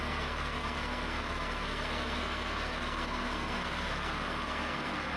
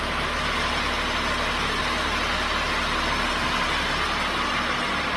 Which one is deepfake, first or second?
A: first